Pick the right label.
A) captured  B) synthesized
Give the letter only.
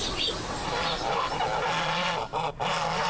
A